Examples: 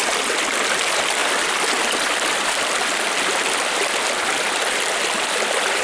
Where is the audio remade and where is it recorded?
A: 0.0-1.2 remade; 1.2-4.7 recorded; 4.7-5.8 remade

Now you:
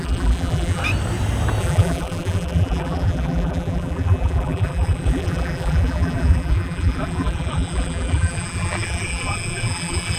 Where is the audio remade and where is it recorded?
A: 0.0-0.8 remade; 0.8-1.6 recorded; 1.6-10.2 remade